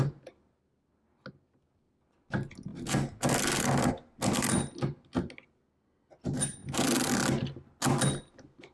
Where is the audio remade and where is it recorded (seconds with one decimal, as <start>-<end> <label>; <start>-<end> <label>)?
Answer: 0.0-8.7 recorded